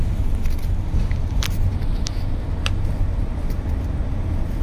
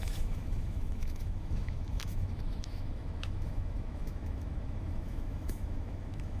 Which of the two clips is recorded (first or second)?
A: first